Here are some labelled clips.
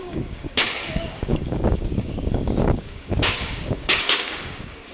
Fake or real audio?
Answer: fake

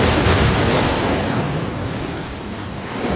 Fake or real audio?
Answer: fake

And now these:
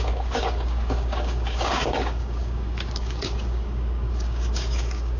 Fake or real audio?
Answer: fake